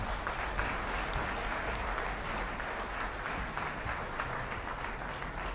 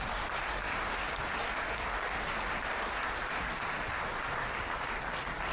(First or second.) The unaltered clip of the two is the first